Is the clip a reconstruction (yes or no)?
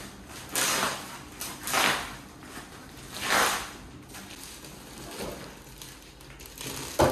no